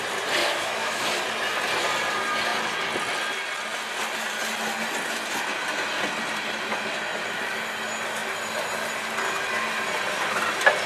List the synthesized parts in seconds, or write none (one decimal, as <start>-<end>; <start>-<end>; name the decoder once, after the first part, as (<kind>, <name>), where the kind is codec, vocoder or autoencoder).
0.4-1.2 (autoencoder, DAC-VAE)

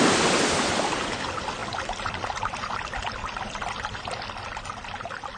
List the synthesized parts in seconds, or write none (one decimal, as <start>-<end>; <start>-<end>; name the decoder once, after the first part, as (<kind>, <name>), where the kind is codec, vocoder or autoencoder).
none

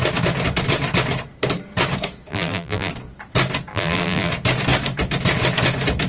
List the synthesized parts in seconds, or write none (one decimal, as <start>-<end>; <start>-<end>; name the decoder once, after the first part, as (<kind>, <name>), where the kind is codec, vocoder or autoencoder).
2.3-2.9 (vocoder, BigVGAN v2); 3.7-4.3

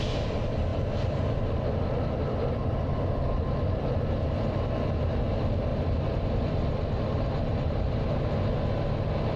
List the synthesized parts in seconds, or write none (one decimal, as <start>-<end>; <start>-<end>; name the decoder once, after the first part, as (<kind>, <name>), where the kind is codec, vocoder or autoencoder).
0.7-4.1 (vocoder, BigVGAN v2); 5.7-8.0